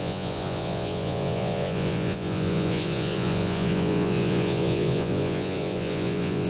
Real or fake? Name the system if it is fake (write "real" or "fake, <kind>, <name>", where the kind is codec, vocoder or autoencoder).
fake, vocoder, Vocos